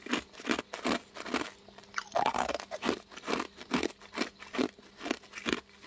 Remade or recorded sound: recorded